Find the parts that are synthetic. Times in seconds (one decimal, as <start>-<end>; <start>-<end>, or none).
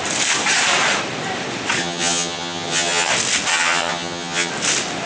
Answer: 1.8-3.1; 3.5-4.5